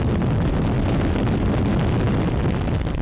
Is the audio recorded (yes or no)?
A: yes